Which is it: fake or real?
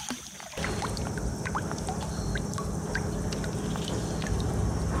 real